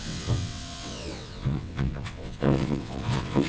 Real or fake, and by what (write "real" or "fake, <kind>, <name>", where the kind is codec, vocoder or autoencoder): fake, vocoder, WaveNeXt